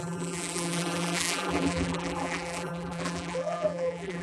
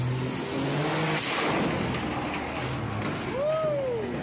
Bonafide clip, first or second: second